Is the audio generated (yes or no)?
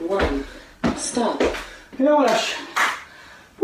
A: no